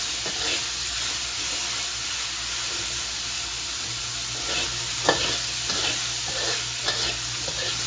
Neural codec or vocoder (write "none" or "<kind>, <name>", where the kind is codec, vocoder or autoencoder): none